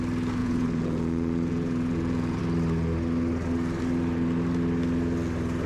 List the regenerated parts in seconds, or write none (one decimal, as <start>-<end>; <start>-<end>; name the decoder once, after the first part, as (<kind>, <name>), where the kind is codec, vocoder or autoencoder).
0.4-2.4 (vocoder, Vocos)